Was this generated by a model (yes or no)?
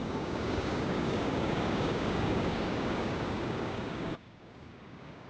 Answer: yes